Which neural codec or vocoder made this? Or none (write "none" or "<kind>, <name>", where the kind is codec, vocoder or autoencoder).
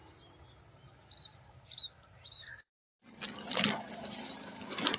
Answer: none